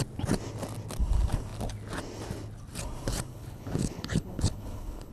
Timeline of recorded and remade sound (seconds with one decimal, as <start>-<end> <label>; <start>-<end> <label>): 0.0-3.3 recorded; 3.3-5.1 remade